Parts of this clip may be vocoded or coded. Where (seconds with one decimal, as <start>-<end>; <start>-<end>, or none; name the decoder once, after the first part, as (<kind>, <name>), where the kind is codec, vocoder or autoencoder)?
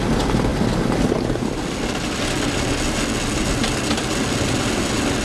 none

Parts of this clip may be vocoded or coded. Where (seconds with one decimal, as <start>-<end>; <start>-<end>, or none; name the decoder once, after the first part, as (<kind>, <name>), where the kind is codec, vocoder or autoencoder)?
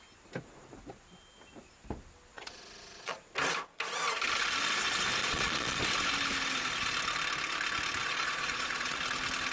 2.3-3.2 (vocoder, Vocos); 5.2-5.8; 8.0-9.0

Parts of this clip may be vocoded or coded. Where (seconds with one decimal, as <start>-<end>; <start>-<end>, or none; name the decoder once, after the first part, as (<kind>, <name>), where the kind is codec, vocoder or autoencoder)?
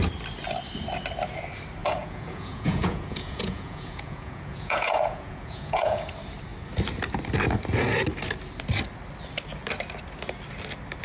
1.8-6.1 (vocoder, Vocos)